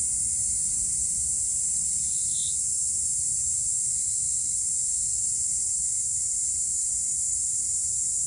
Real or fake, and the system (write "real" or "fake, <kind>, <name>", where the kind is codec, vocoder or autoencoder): real